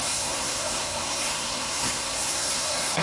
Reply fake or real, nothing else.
fake